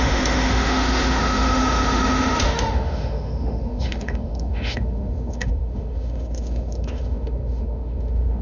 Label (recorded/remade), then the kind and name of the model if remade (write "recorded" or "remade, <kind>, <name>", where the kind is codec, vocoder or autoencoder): remade, autoencoder, DAC-VAE